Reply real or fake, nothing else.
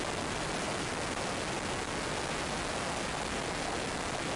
real